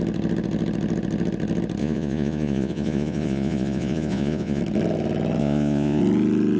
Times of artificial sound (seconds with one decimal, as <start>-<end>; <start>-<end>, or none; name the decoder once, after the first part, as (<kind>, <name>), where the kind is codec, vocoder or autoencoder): 1.8-4.6 (vocoder, Vocos); 5.4-6.0